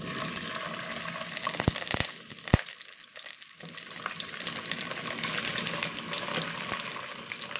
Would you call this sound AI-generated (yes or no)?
no